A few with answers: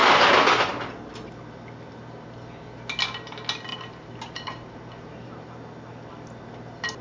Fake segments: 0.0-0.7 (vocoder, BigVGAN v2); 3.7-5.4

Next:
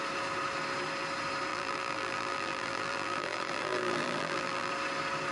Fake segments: 1.5-4.7 (vocoder, BigVGAN v2)

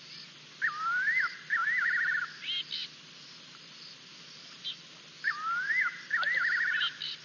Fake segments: none

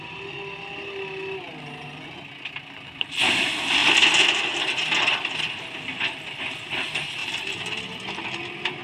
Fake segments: none